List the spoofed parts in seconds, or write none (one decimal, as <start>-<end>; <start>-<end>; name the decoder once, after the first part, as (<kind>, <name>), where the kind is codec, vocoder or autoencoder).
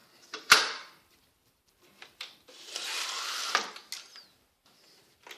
0.0-3.2 (vocoder, BigVGAN v2)